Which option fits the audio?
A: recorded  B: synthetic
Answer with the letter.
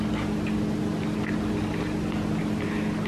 A